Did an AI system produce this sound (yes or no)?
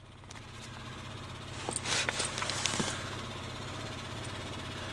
no